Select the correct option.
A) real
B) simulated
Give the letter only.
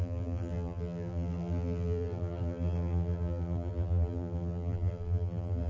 B